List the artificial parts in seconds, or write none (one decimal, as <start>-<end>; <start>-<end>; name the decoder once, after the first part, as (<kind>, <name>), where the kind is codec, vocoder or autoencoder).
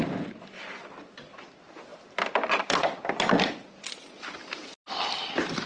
1.9-3.7 (vocoder, BigVGAN v2); 4.6-5.7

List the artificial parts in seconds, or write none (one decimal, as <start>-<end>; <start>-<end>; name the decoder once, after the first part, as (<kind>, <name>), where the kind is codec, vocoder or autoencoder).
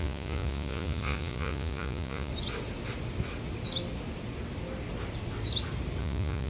0.0-2.3 (vocoder, Vocos); 6.0-6.5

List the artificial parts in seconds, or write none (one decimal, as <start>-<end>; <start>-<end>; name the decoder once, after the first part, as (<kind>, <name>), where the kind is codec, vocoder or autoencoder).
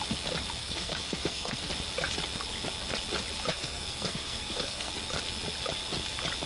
0.6-1.7 (codec, SNAC); 3.5-4.9